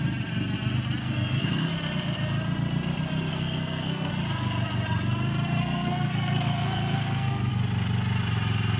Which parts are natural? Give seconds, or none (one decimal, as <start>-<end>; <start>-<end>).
0.0-1.0; 1.7-3.3; 4.1-5.6; 7.5-8.8